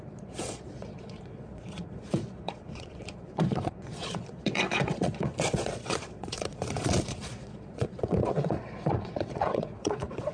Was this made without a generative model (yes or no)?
no